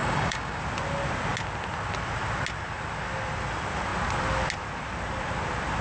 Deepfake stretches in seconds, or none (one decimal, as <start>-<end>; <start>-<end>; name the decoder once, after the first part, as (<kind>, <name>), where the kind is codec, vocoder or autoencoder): 0.0-0.6 (codec, DAC)